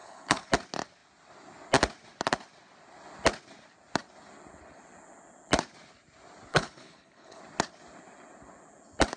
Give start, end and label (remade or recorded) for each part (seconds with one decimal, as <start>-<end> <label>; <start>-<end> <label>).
0.0-0.5 remade; 0.5-6.5 recorded; 6.5-7.4 remade; 7.4-9.2 recorded

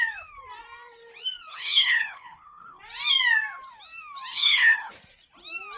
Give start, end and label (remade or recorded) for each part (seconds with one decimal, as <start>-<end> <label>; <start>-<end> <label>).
0.0-1.5 recorded; 1.5-2.8 remade; 2.8-4.3 recorded; 4.3-4.9 remade; 4.9-5.8 recorded

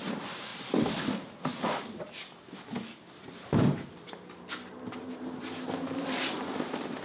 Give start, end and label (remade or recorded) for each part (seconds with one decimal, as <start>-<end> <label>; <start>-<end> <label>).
0.0-7.0 recorded